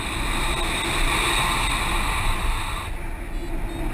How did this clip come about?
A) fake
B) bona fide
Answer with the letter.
B